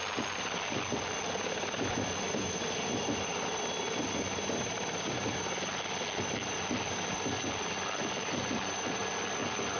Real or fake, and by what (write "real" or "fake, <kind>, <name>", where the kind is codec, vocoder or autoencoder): real